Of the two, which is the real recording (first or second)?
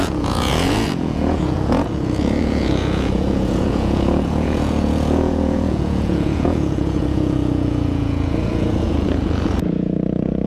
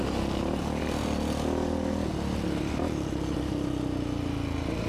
second